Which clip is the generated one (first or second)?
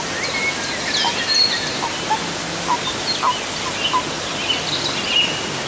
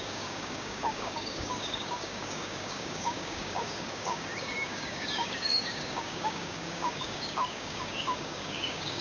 second